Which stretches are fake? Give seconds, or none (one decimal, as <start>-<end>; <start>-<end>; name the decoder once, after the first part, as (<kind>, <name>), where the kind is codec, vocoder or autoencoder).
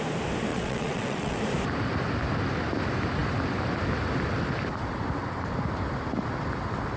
0.5-1.4 (vocoder, WaveNeXt)